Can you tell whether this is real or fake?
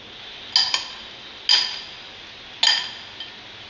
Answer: real